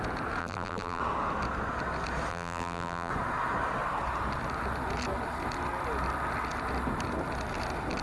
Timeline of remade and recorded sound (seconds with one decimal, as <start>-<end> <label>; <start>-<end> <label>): 0.0-0.4 recorded; 0.4-1.0 remade; 1.0-2.3 recorded; 2.3-3.1 remade; 3.1-8.0 recorded